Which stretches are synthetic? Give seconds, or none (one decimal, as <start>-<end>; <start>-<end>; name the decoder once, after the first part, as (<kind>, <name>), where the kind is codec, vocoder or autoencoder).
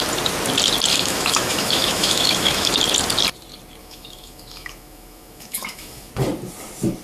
0.9-2.7 (autoencoder, DAC-VAE); 3.8-6.1